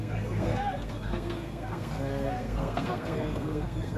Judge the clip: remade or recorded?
remade